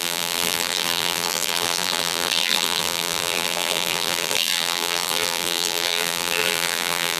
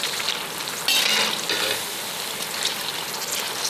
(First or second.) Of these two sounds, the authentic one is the second